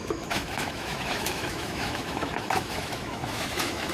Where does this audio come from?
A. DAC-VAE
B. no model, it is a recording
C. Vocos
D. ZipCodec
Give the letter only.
A